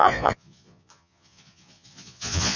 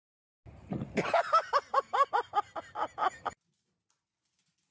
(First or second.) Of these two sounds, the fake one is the first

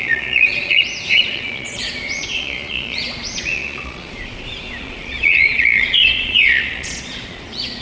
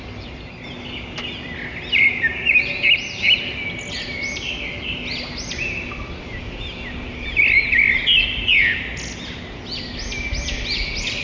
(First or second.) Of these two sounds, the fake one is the first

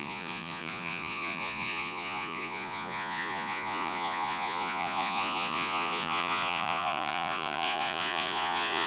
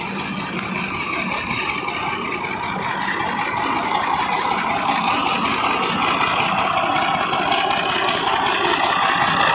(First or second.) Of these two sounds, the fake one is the first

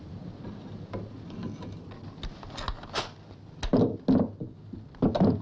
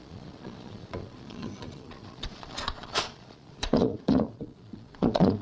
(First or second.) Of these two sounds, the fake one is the second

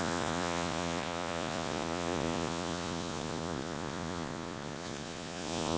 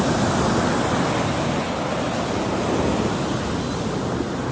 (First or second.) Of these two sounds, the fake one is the first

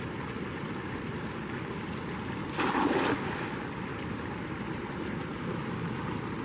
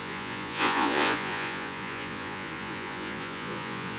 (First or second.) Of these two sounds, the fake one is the second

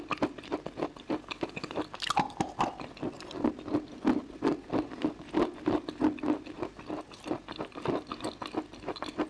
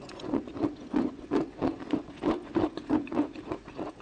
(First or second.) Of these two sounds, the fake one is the second